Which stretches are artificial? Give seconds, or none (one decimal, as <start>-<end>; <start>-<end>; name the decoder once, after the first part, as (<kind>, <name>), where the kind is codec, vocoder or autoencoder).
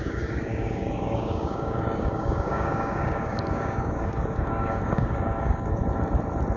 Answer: 0.0-5.8 (codec, DAC)